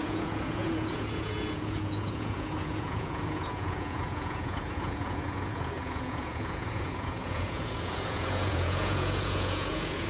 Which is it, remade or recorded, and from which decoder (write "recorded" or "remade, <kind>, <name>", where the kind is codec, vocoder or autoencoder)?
remade, vocoder, Vocos